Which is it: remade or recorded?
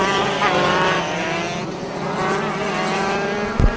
recorded